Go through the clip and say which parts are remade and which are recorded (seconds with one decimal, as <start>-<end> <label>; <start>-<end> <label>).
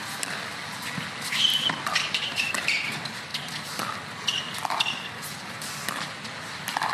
0.0-1.5 recorded; 1.5-2.7 remade; 2.7-6.9 recorded